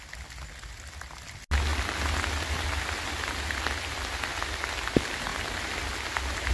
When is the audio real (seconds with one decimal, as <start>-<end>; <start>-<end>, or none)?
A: 0.0-6.5